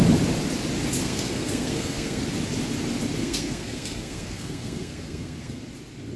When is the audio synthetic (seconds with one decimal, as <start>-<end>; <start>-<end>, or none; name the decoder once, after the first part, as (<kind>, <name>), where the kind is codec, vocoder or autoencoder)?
1.0-2.2 (codec, SNAC); 3.2-5.6